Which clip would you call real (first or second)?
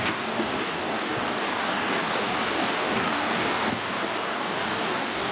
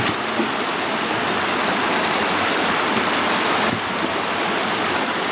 second